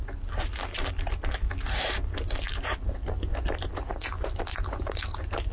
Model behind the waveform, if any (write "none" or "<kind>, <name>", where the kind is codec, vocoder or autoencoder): none